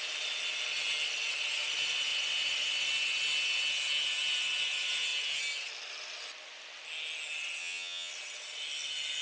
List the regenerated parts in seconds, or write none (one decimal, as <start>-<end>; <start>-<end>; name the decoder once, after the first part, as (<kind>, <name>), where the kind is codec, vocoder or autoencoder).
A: 7.6-8.1 (vocoder, HiFi-GAN)